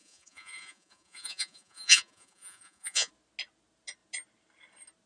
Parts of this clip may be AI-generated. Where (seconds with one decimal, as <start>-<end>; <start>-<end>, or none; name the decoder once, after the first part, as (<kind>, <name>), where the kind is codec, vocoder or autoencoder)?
0.0-3.1 (vocoder, Vocos)